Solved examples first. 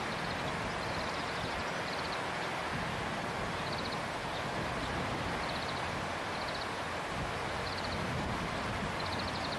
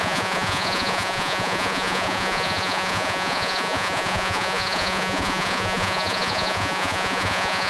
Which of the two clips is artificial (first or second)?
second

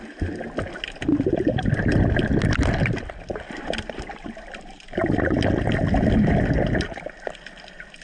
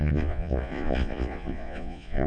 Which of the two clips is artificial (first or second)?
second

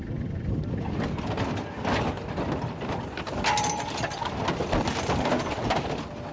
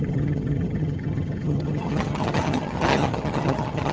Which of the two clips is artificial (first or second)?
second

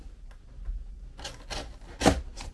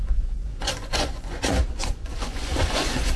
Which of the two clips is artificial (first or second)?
second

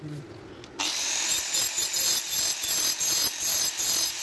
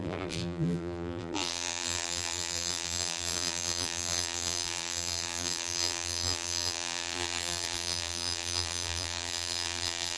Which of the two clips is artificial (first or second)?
second